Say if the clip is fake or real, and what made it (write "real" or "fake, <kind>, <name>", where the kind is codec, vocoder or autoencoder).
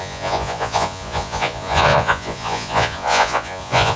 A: fake, vocoder, Vocos